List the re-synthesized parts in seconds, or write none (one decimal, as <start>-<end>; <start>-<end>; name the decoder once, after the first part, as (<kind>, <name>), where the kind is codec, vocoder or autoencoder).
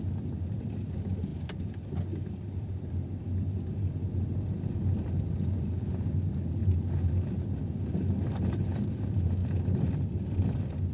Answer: none